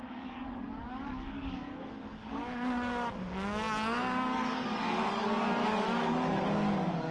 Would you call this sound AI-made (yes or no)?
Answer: yes